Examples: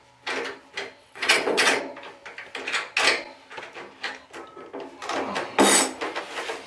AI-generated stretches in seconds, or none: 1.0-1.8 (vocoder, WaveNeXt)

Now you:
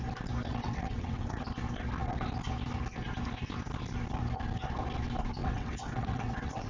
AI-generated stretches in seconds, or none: 0.5-1.4 (vocoder, WaveNeXt); 5.4-6.7

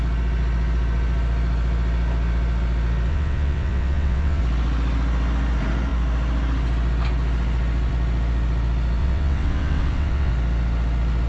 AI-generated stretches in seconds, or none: 3.1-4.4 (vocoder, WaveNeXt); 9.0-10.3

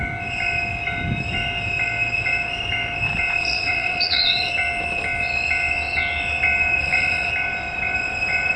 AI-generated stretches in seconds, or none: 3.4-4.5 (vocoder, WaveNeXt); 6.8-7.3

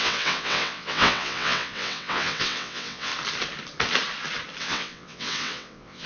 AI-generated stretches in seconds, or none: 0.0-3.1 (vocoder, WaveNeXt); 4.6-6.1